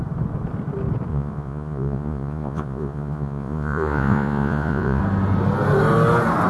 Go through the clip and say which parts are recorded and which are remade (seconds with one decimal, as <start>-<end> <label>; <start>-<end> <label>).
0.0-1.1 recorded; 1.1-5.0 remade; 5.0-6.5 recorded